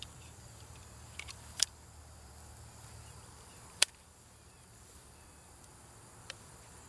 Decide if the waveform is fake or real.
fake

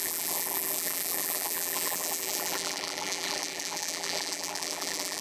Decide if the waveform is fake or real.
fake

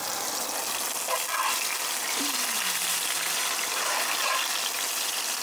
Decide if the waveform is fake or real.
real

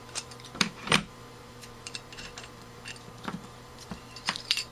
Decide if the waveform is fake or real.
fake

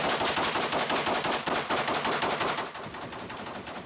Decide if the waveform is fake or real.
real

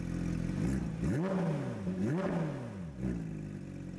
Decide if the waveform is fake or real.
real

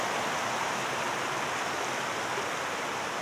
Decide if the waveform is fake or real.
real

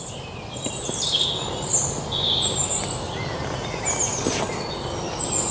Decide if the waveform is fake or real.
real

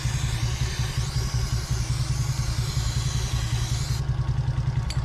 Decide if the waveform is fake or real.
real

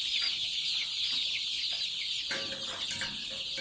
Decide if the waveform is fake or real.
real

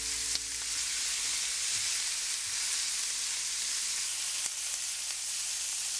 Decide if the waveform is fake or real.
real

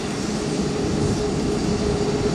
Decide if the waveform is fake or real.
real